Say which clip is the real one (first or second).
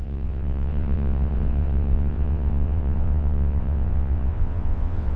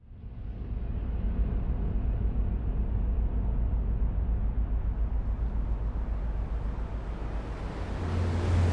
second